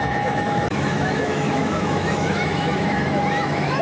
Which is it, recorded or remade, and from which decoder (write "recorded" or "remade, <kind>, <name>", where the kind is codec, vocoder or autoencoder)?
remade, autoencoder, DAC-VAE